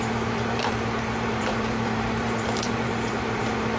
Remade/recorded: remade